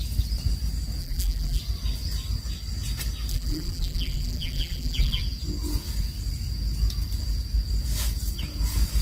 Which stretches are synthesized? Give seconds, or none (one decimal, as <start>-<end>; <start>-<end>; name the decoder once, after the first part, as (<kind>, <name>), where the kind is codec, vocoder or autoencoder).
1.0-1.6 (vocoder, BigVGAN v2); 3.3-5.2